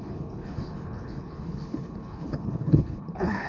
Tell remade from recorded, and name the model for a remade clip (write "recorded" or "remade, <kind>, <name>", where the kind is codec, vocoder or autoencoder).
remade, codec, HILCodec